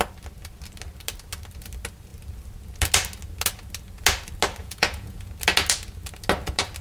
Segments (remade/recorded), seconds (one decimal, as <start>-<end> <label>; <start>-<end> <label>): 0.0-4.6 recorded; 4.6-5.3 remade; 5.3-6.8 recorded